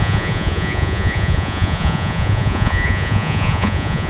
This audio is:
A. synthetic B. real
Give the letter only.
A